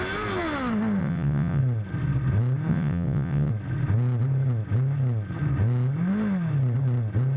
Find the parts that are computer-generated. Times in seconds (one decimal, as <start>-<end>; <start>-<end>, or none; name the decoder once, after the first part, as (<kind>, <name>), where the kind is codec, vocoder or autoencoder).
1.0-1.6 (vocoder, WaveNeXt); 2.7-3.5